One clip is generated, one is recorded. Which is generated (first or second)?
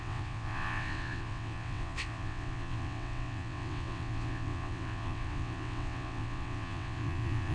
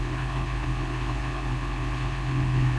first